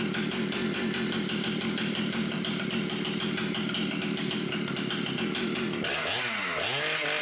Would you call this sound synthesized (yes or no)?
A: no